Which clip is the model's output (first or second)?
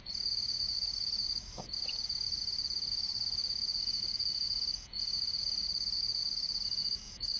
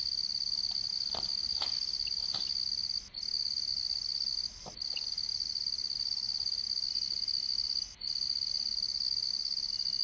first